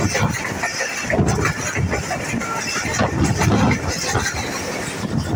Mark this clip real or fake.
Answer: real